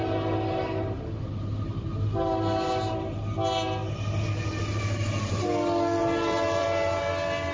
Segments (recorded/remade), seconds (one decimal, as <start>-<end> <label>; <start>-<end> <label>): 0.0-6.0 recorded; 6.0-7.1 remade; 7.1-7.5 recorded